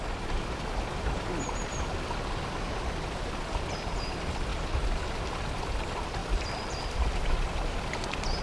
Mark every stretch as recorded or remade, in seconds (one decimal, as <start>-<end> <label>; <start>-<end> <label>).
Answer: 0.0-6.2 recorded; 6.2-8.0 remade; 8.0-8.4 recorded